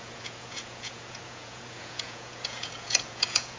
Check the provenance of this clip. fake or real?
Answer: fake